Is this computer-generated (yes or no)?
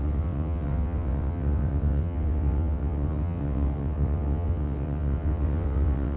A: yes